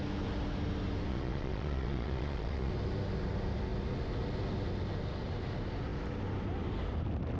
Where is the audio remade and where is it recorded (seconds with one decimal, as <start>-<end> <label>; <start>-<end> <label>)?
0.0-1.1 recorded; 1.1-2.7 remade; 2.7-7.4 recorded